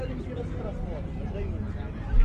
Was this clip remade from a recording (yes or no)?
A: no